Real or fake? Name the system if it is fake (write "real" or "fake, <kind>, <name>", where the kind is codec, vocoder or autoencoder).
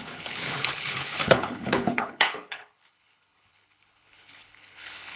fake, codec, HILCodec